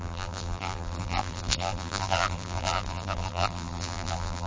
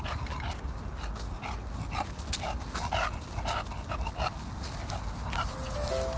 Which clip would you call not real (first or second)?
first